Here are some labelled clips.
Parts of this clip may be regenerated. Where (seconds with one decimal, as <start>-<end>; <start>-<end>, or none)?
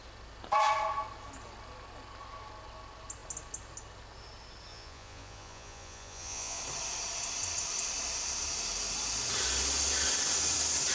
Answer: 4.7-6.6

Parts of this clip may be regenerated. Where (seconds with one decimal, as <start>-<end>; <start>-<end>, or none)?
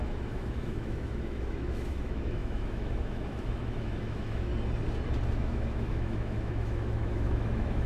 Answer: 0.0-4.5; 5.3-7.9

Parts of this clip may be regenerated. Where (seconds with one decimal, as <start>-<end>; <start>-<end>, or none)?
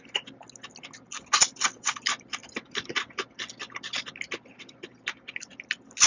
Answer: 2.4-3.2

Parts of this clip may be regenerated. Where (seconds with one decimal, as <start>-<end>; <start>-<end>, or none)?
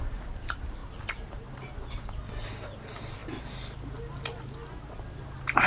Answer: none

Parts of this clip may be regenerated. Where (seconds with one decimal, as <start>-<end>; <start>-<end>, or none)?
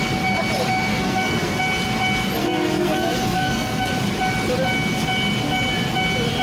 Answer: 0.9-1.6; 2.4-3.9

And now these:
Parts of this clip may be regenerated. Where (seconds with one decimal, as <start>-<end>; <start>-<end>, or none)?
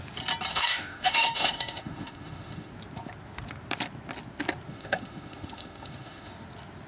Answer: 0.5-2.7; 4.7-6.3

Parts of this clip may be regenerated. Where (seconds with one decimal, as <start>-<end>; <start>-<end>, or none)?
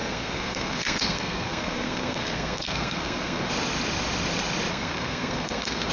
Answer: 0.0-3.5; 4.7-5.9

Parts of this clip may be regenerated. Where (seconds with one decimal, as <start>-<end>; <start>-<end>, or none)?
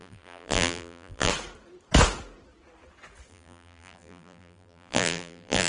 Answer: 0.0-1.3; 3.3-5.7